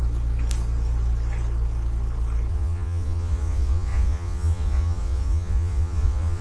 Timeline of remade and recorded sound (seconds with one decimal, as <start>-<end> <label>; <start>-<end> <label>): 0.0-2.5 recorded; 2.5-6.4 remade